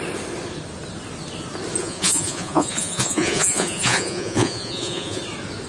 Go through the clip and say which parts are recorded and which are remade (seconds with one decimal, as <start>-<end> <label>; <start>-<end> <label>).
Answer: 0.0-1.8 recorded; 1.8-5.2 remade; 5.2-5.7 recorded